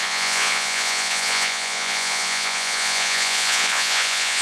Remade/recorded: remade